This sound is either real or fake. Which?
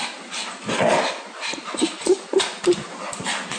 fake